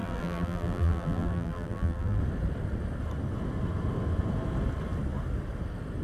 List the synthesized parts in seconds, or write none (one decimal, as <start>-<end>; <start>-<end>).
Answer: 0.0-2.2